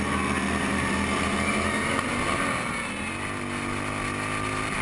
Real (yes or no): yes